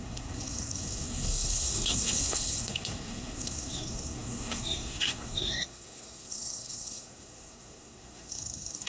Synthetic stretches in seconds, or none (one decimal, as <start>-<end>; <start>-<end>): 0.0-8.9